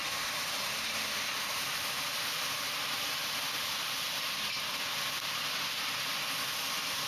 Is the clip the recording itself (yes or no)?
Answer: yes